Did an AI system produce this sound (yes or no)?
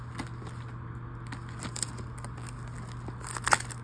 no